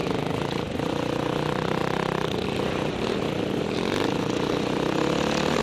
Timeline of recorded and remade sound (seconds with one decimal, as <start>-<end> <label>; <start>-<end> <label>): 0.0-5.6 recorded

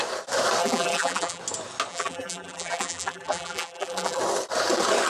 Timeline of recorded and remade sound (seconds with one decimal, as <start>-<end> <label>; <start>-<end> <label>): 0.0-0.6 recorded; 0.6-1.4 remade; 1.4-1.9 recorded; 1.9-4.2 remade; 4.2-5.1 recorded

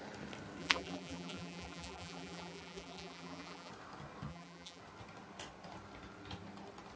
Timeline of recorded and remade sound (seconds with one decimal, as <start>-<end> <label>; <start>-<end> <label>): 0.0-0.6 recorded; 0.6-3.7 remade; 3.7-4.3 recorded; 4.3-4.8 remade; 4.8-7.0 recorded

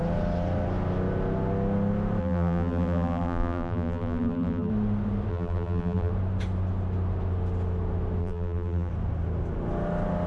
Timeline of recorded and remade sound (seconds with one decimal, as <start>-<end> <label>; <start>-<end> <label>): 0.0-2.2 recorded; 2.2-4.7 remade; 4.7-5.3 recorded; 5.3-6.1 remade; 6.1-8.2 recorded; 8.2-8.9 remade; 8.9-10.3 recorded

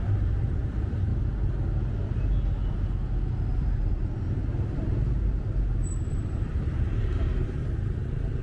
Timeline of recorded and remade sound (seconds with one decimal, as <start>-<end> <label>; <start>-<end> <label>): 0.0-1.1 remade; 1.1-3.5 recorded; 3.5-4.4 remade; 4.4-6.0 recorded; 6.0-8.4 remade